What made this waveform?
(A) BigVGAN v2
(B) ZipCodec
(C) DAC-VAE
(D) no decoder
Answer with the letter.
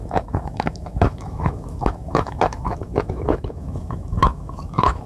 C